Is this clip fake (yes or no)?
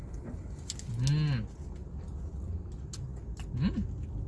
no